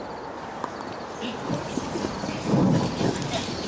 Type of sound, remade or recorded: recorded